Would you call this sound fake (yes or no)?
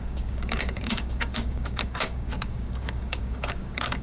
yes